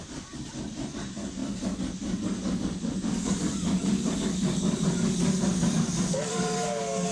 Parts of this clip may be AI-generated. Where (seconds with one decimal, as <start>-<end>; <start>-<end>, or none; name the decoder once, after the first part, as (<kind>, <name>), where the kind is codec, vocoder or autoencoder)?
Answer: 0.0-7.1 (codec, DAC)